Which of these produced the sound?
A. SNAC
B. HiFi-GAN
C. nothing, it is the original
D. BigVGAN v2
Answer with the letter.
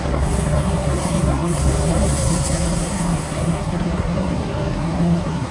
A